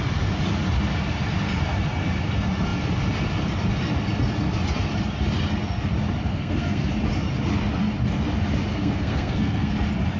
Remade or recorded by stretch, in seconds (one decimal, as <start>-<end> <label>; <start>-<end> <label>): 0.0-6.3 recorded; 6.3-6.9 remade; 6.9-8.7 recorded; 8.7-9.7 remade; 9.7-10.2 recorded